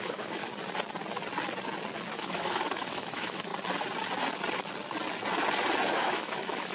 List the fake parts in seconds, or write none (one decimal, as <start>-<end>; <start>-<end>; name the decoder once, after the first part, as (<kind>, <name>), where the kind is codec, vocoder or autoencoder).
0.0-0.4 (autoencoder, DAC-VAE); 2.1-3.5; 5.9-6.7